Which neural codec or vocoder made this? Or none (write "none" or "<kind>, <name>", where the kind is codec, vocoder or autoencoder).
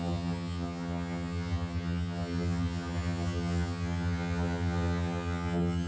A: vocoder, HiFi-GAN